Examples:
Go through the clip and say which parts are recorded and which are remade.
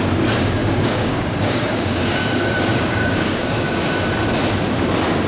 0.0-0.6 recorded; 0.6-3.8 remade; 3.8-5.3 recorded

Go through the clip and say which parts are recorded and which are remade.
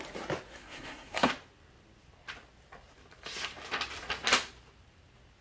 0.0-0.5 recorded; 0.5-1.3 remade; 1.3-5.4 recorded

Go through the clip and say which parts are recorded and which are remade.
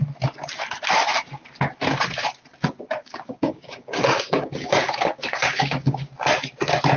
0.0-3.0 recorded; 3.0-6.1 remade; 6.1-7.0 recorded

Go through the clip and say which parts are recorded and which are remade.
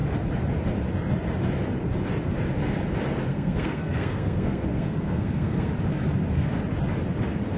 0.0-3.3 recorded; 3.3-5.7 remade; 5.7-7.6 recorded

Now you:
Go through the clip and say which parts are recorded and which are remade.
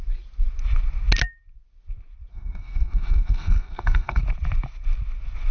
0.0-2.3 recorded; 2.3-4.2 remade; 4.2-5.5 recorded